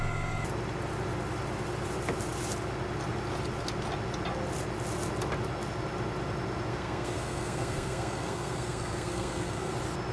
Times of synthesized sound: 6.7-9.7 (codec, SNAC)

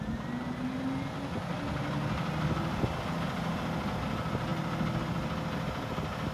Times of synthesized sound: none